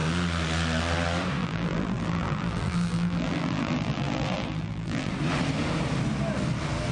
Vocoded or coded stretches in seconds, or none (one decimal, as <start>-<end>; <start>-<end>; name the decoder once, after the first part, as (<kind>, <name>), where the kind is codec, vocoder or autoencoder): 1.4-5.1 (vocoder, BigVGAN v2)